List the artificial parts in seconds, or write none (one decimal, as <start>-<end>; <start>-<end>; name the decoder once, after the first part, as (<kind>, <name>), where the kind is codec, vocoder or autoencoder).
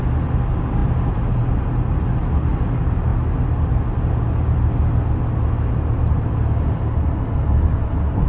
none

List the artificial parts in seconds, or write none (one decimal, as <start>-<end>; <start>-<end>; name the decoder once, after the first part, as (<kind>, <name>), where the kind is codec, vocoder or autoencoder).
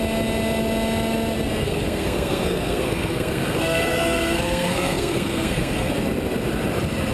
1.6-5.9 (codec, SNAC)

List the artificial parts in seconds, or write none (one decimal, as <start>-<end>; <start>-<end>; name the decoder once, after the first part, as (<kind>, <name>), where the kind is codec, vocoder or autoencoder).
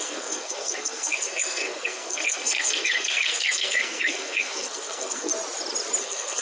0.0-5.3 (codec, SNAC); 6.0-6.4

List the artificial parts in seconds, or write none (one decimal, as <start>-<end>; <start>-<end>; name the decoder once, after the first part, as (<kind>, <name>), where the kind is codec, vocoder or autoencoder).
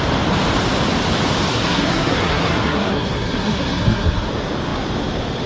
1.5-4.3 (codec, SNAC)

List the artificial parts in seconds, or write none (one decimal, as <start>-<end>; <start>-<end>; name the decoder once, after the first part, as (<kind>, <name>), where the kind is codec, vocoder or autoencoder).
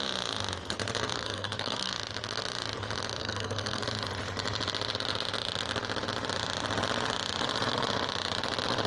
1.1-1.9 (codec, SNAC); 3.2-3.8